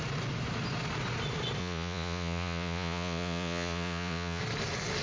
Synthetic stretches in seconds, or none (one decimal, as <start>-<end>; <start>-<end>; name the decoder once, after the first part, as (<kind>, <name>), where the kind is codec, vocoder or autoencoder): 1.6-4.4 (vocoder, Vocos)